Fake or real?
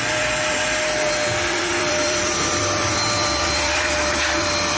fake